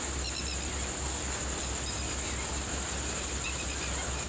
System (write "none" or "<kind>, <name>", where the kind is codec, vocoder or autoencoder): none